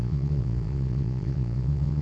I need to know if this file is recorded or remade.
remade